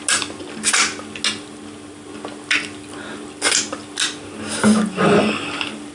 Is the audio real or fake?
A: real